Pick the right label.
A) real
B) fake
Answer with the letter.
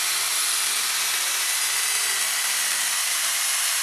B